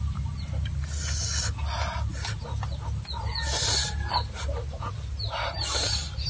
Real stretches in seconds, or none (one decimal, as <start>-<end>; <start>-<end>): 0.0-6.3